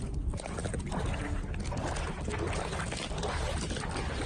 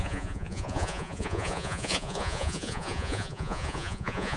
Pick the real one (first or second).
first